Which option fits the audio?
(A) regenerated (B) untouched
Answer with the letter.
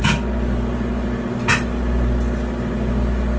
B